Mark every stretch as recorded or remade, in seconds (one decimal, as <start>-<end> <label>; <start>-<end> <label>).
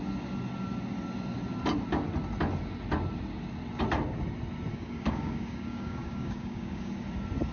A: 0.0-4.7 recorded; 4.7-6.9 remade; 6.9-7.5 recorded